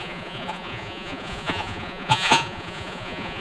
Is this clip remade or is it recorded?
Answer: remade